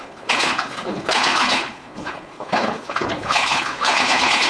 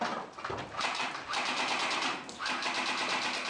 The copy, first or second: first